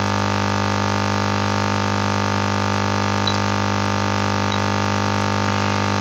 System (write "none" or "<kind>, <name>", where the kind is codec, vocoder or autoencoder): none